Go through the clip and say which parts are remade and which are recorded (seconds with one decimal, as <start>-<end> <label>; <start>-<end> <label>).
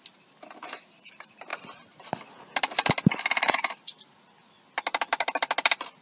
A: 0.0-6.0 recorded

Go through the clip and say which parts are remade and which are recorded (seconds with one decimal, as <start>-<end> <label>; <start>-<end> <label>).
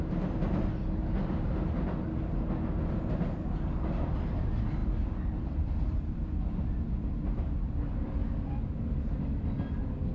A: 0.0-4.8 recorded; 4.8-6.1 remade; 6.1-10.1 recorded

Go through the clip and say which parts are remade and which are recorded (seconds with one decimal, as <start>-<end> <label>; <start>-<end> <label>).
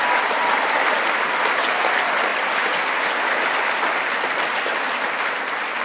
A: 0.0-5.8 recorded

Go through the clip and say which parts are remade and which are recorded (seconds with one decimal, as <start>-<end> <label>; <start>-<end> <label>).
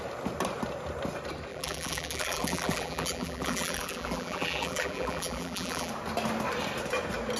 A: 0.0-1.5 recorded; 1.5-5.9 remade; 5.9-7.4 recorded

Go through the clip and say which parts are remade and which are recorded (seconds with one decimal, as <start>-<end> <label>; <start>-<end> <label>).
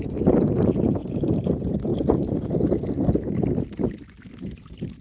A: 0.0-1.9 remade; 1.9-5.0 recorded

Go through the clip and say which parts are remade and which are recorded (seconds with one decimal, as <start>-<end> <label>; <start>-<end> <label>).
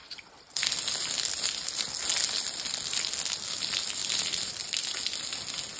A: 0.0-0.8 remade; 0.8-4.0 recorded; 4.0-5.0 remade; 5.0-5.8 recorded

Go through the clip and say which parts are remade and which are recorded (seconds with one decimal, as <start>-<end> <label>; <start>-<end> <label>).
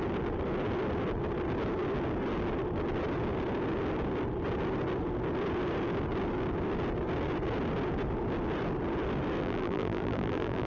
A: 0.0-9.4 recorded; 9.4-10.7 remade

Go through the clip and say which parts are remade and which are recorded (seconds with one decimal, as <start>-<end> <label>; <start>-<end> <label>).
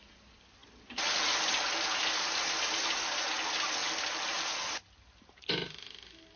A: 0.0-6.4 recorded